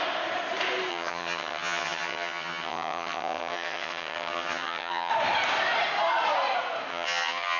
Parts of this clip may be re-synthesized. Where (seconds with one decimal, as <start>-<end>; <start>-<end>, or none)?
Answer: 0.9-5.1; 6.9-7.6